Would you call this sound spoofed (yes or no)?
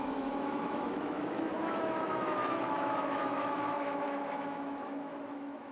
yes